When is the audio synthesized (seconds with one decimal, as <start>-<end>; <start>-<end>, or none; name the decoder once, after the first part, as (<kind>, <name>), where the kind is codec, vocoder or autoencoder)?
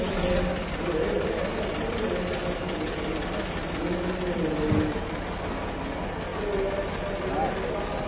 none